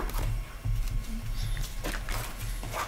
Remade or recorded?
recorded